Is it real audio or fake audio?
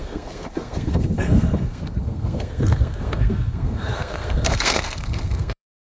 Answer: fake